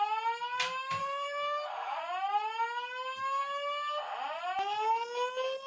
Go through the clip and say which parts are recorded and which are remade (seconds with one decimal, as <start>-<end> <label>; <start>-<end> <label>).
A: 0.0-1.0 recorded; 1.0-2.0 remade; 2.0-5.7 recorded